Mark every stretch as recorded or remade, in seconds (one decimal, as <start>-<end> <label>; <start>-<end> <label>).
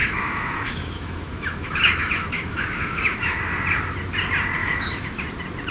0.0-3.4 remade; 3.4-4.6 recorded; 4.6-5.2 remade; 5.2-5.7 recorded